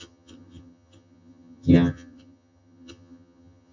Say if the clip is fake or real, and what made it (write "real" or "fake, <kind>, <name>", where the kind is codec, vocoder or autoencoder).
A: fake, vocoder, HiFi-GAN